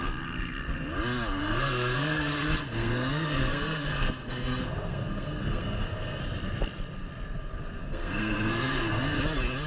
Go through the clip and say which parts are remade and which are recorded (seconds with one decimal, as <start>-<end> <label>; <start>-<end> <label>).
0.0-1.4 recorded; 1.4-6.2 remade; 6.2-7.8 recorded; 7.8-9.2 remade; 9.2-9.7 recorded